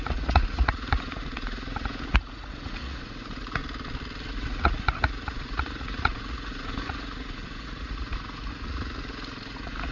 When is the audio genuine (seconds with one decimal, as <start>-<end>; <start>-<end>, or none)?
3.6-4.3